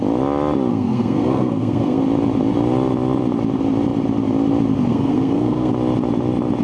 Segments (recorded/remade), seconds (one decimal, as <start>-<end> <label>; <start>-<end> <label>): 0.0-0.7 recorded; 0.7-2.0 remade; 2.0-4.9 recorded; 4.9-5.7 remade; 5.7-6.6 recorded